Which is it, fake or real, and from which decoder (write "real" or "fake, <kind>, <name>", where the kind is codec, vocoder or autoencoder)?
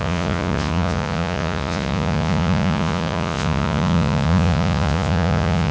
fake, vocoder, Vocos